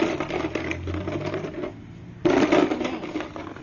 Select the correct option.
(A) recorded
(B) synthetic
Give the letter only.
A